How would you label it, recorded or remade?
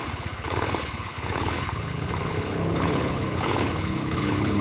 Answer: remade